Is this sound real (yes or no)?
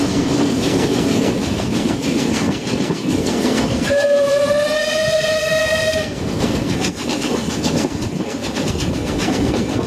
no